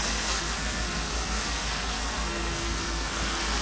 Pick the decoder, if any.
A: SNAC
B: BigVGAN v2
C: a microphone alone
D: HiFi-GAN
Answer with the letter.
A